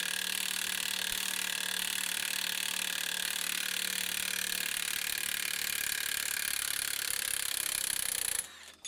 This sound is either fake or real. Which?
real